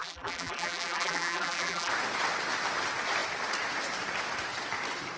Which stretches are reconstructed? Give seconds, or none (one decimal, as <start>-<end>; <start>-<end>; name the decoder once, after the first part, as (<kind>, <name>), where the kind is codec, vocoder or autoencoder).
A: 0.0-1.9 (vocoder, BigVGAN v2)